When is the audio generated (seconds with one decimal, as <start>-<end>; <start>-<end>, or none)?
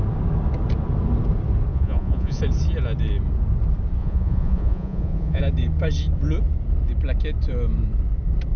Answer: 1.7-2.4; 4.0-5.4